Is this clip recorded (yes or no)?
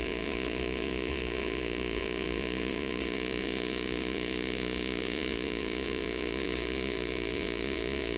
no